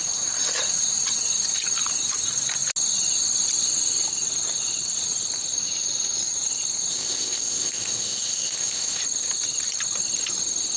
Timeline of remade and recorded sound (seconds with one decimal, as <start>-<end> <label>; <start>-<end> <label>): 0.0-6.9 recorded; 6.9-9.0 remade; 9.0-10.8 recorded